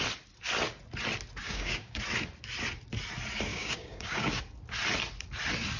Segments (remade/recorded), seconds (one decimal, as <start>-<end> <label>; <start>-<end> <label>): 0.0-1.4 recorded; 1.4-2.0 remade; 2.0-3.5 recorded; 3.5-4.4 remade; 4.4-5.8 recorded

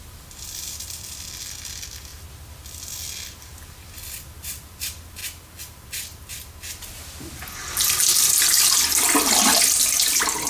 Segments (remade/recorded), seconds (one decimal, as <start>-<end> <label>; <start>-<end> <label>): 0.0-2.1 remade; 2.1-4.2 recorded; 4.2-5.2 remade; 5.2-10.5 recorded

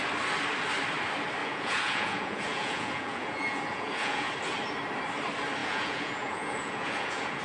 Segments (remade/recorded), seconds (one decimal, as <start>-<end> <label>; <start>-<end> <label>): 0.0-1.4 recorded; 1.4-4.3 remade; 4.3-5.6 recorded; 5.6-7.4 remade